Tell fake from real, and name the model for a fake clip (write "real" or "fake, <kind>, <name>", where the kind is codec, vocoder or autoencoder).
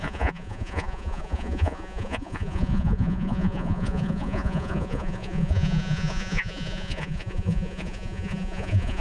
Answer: fake, vocoder, Vocos